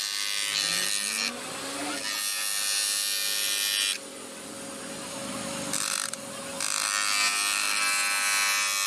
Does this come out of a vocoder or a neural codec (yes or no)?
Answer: no